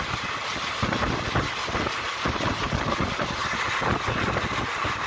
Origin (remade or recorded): recorded